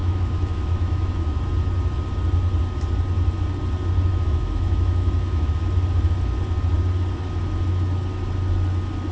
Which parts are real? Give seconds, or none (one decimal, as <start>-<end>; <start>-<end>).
1.3-4.1; 5.5-9.1